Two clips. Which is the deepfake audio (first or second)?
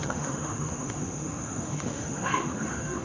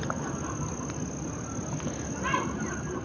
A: first